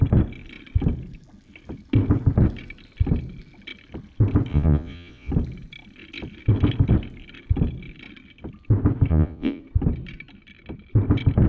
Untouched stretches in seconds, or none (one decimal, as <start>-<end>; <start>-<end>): 0.0-4.5; 5.3-9.1; 9.6-11.5

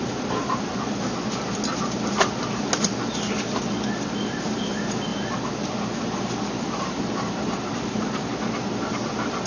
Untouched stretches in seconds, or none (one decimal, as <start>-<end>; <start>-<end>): 0.7-4.2; 5.1-6.8; 8.3-8.9

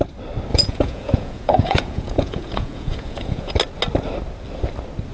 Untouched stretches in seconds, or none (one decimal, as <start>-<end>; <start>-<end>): 0.0-0.5; 3.6-5.1

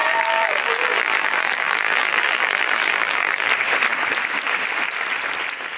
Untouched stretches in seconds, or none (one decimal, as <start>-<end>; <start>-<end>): 3.5-5.8

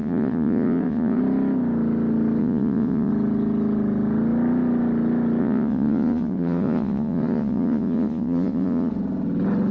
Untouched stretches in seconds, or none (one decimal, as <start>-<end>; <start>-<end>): 1.2-2.4; 3.1-5.4; 8.9-9.7